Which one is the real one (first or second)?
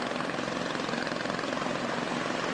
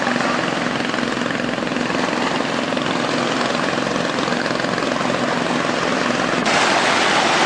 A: second